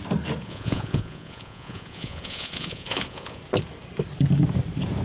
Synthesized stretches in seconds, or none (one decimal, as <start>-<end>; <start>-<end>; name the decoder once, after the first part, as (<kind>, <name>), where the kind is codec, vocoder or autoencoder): 0.4-3.4 (vocoder, Vocos)